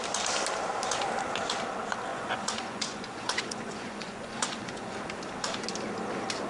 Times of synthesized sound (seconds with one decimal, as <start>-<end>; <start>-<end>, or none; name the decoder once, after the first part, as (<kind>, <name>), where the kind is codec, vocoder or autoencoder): 2.1-5.0 (vocoder, Vocos)